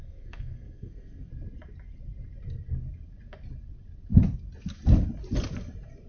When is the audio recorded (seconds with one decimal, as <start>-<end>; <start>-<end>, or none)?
1.3-6.1